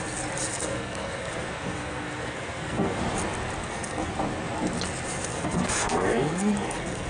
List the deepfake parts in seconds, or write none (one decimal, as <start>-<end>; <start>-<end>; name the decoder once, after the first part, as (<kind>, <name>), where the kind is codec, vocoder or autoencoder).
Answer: 0.5-3.0 (codec, SNAC); 3.6-4.1; 5.3-7.1